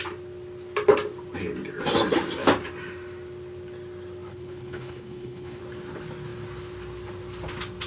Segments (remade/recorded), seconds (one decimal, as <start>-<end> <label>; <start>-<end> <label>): 0.0-4.3 recorded; 4.3-5.6 remade; 5.6-7.9 recorded